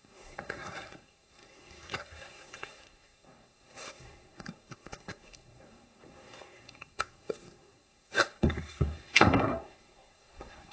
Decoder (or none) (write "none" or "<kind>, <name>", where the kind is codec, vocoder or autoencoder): codec, SNAC